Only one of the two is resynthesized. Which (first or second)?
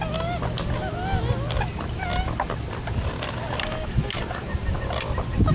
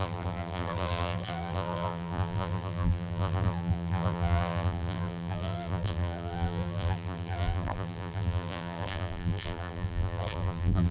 second